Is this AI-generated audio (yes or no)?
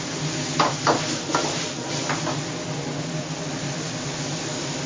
no